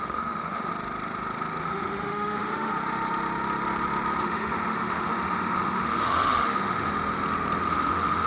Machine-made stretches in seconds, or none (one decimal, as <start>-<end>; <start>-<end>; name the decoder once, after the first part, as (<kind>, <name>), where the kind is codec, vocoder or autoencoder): 0.0-0.7 (autoencoder, DAC-VAE); 1.6-2.7; 4.2-6.9; 7.6-8.3